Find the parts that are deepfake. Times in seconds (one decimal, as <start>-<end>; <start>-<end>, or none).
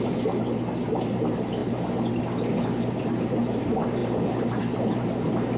none